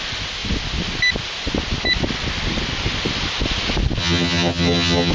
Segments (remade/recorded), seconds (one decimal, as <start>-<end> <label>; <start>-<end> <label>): 0.0-4.0 recorded; 4.0-5.1 remade